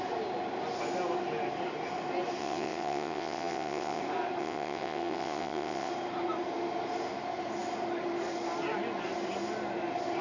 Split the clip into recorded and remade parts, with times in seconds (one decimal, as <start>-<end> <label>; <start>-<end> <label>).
0.0-2.4 recorded; 2.4-4.0 remade; 4.0-4.4 recorded; 4.4-5.9 remade; 5.9-10.2 recorded